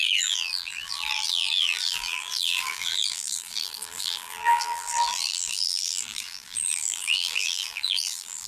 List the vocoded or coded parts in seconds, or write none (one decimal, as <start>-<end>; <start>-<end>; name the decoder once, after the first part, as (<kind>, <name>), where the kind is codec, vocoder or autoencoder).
0.0-8.5 (vocoder, BigVGAN v2)